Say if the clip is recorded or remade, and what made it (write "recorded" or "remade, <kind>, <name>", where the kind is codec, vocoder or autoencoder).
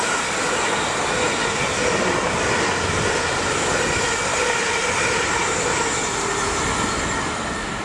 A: recorded